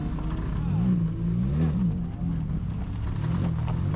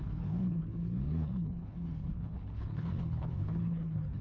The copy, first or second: second